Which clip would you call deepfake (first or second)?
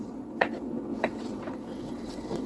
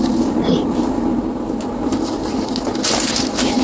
first